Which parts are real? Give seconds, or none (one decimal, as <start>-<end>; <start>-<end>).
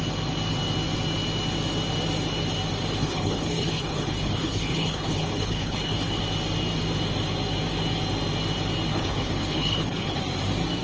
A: 0.0-3.0; 6.2-8.9; 10.2-10.8